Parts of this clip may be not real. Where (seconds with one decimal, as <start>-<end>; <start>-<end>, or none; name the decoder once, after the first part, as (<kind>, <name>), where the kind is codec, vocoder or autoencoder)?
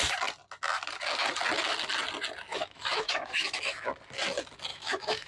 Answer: 2.5-3.9 (autoencoder, DAC-VAE); 4.7-5.3